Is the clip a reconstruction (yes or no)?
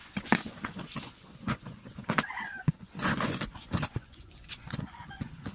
yes